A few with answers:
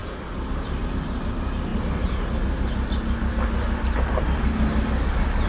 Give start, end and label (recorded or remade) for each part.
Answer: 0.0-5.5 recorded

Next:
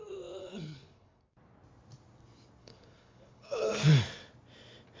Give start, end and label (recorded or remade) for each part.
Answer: 0.0-0.4 recorded; 0.4-1.2 remade; 1.2-2.6 recorded; 2.6-3.7 remade; 3.7-5.0 recorded

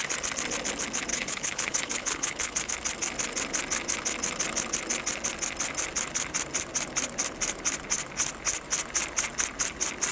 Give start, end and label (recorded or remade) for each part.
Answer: 0.0-1.1 recorded; 1.1-2.7 remade; 2.7-10.1 recorded

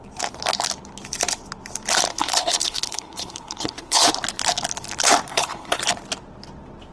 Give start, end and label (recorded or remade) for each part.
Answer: 0.0-2.1 recorded; 2.1-4.1 remade; 4.1-5.3 recorded; 5.3-5.8 remade; 5.8-6.9 recorded

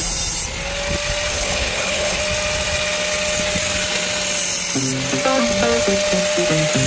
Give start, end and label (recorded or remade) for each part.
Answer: 0.0-1.3 recorded; 1.3-2.2 remade; 2.2-6.9 recorded